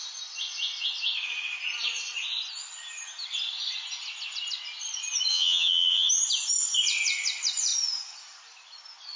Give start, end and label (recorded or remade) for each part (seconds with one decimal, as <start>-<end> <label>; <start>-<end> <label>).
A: 0.0-5.3 recorded; 5.3-6.1 remade; 6.1-9.2 recorded